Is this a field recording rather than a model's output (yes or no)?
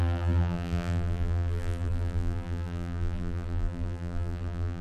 no